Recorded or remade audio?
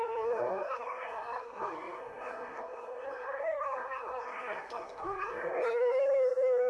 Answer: remade